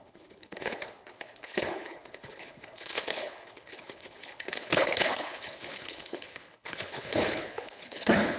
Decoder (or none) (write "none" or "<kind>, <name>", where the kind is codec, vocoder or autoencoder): codec, HILCodec